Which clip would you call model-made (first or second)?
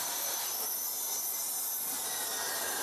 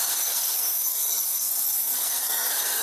second